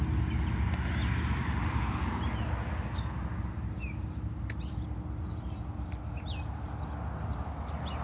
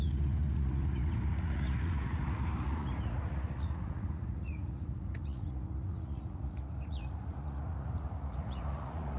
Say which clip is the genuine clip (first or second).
first